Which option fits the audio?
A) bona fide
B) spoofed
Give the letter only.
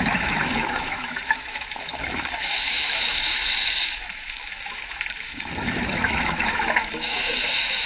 B